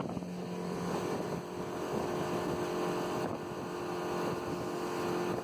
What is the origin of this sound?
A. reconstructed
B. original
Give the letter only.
B